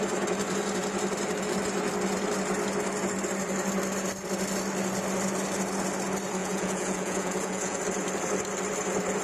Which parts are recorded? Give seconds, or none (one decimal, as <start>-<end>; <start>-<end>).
0.0-6.4; 7.8-9.2